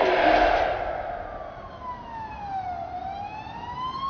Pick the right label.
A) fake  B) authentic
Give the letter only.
B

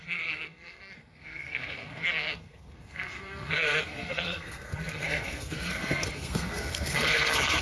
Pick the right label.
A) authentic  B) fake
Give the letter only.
B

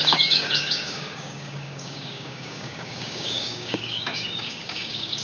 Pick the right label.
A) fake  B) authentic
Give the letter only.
A